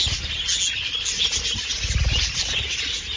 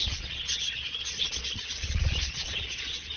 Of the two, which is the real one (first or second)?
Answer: first